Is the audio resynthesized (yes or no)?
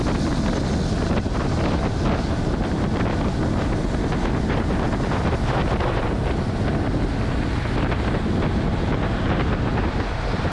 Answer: no